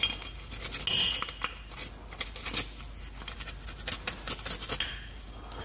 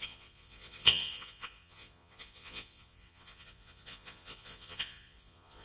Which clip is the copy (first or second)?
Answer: second